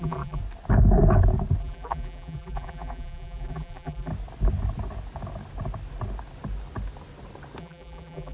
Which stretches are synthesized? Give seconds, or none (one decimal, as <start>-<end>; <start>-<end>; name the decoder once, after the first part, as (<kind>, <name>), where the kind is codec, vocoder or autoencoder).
0.0-0.4 (vocoder, BigVGAN v2); 1.6-4.1; 7.6-8.3